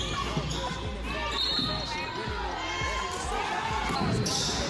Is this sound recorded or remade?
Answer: recorded